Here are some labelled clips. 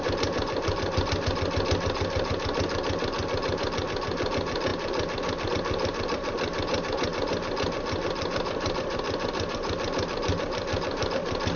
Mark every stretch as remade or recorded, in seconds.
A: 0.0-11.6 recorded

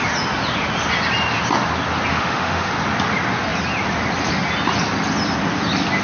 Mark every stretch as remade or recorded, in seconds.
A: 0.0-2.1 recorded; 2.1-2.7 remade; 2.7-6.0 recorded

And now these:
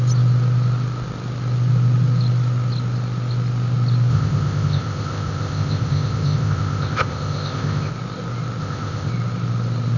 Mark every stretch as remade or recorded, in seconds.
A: 0.0-4.1 recorded; 4.1-7.9 remade; 7.9-8.6 recorded; 8.6-9.1 remade; 9.1-10.0 recorded

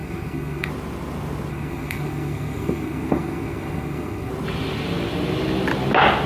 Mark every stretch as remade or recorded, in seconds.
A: 0.0-0.7 remade; 0.7-1.5 recorded; 1.5-4.3 remade; 4.3-6.3 recorded

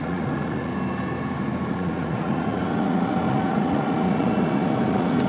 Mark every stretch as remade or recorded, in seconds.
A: 0.0-0.7 remade; 0.7-1.7 recorded; 1.7-5.3 remade

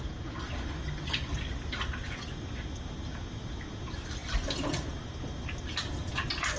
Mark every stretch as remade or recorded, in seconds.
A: 0.0-6.6 recorded

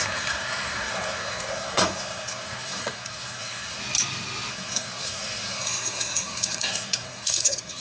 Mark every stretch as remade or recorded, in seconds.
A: 0.0-3.8 remade; 3.8-4.5 recorded; 4.5-7.8 remade